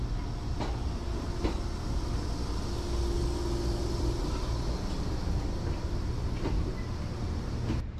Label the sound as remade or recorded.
recorded